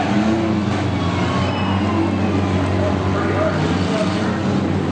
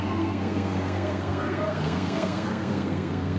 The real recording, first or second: first